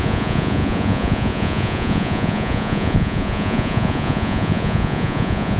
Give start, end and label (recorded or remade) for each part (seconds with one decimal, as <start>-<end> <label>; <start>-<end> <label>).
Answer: 0.0-5.6 remade